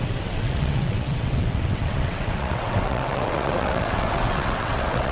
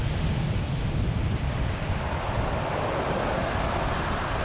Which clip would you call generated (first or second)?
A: first